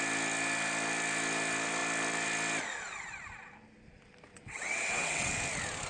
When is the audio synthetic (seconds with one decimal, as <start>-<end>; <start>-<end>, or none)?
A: 4.3-5.3

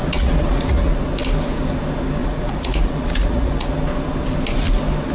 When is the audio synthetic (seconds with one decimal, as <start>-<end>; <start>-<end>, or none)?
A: 0.0-0.9; 2.2-3.7

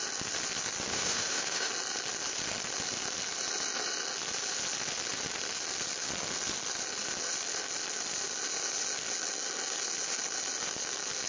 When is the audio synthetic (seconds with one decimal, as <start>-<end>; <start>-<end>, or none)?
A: 0.9-1.7

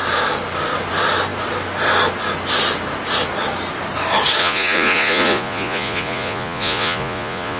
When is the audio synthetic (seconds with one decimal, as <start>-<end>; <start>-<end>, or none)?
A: 4.4-7.6